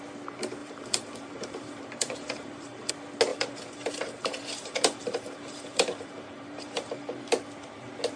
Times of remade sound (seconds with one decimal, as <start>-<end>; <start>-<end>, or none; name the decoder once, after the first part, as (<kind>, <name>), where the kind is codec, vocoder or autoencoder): 0.6-2.9 (vocoder, BigVGAN v2); 3.3-6.9